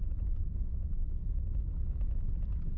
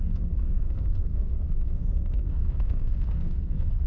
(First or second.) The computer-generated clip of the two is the second